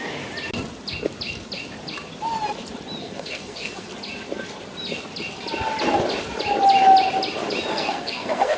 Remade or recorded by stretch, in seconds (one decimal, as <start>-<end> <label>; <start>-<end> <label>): 0.0-3.0 recorded; 3.0-3.9 remade; 3.9-7.7 recorded; 7.7-8.6 remade